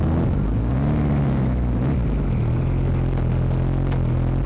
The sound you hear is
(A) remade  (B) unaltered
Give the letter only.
B